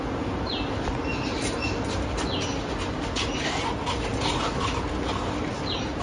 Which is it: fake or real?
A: real